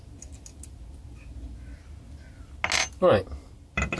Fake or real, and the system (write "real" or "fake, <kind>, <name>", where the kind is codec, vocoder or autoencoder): real